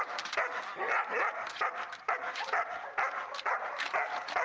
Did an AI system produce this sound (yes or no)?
no